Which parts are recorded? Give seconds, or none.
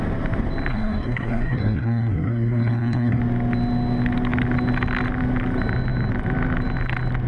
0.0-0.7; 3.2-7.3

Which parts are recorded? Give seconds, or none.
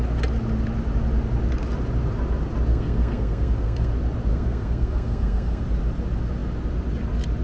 0.0-2.7; 3.9-4.3; 5.6-7.4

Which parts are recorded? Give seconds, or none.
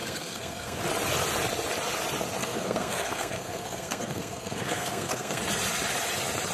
0.8-2.4; 5.4-6.5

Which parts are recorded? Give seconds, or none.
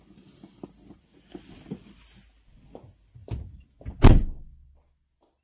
0.0-5.4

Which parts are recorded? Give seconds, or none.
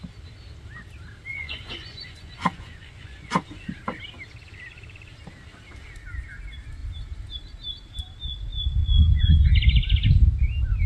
0.0-1.3; 3.7-8.8; 9.5-10.9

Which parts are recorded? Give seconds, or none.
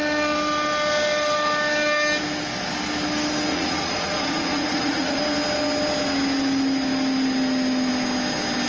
0.0-3.5; 5.2-8.7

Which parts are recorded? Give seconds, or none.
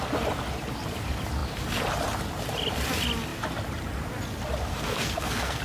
0.0-4.7